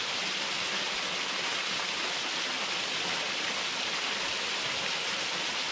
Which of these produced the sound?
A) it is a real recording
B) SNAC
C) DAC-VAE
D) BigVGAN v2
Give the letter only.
A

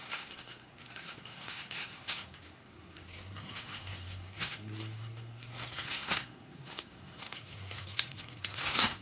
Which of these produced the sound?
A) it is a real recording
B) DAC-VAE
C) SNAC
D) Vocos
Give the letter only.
C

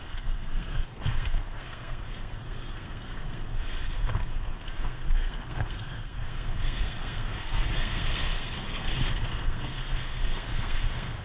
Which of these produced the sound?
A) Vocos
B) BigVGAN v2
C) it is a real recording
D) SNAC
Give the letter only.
D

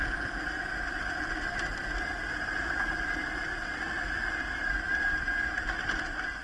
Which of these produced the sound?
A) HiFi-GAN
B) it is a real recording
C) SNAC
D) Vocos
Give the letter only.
B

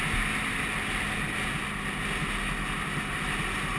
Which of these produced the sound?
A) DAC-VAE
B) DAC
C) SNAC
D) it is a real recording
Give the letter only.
D